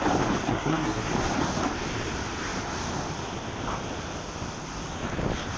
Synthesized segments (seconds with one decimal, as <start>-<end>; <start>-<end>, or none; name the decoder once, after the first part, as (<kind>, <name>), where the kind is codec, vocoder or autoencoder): 0.5-1.1 (codec, SNAC)